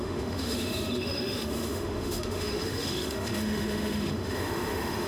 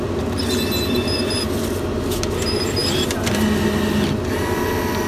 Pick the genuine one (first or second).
second